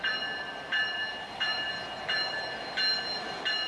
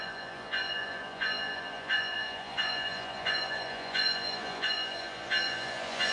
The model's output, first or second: second